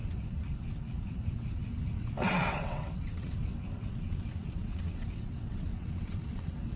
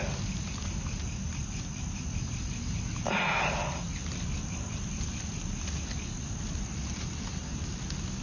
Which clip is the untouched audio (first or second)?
second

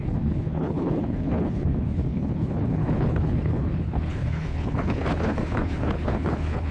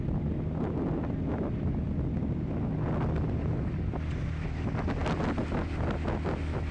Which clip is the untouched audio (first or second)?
second